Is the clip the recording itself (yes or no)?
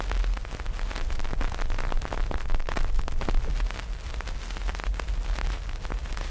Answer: yes